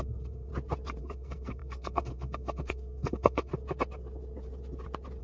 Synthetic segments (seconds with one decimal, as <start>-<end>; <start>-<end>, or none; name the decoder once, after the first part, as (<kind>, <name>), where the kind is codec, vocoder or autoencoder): 0.0-0.5 (codec, SNAC); 1.0-3.5